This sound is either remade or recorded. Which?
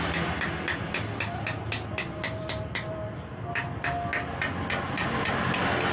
recorded